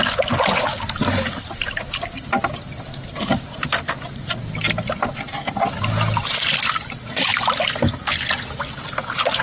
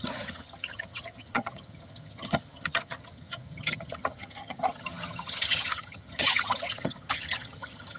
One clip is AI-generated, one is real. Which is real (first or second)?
first